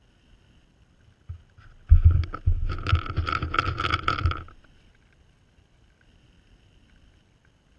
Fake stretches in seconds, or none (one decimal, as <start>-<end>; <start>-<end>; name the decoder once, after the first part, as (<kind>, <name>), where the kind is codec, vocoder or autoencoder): none